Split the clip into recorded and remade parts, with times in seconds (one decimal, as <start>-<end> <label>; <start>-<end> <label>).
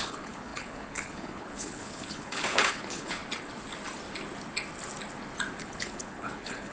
0.0-3.2 remade; 3.2-5.6 recorded; 5.6-6.7 remade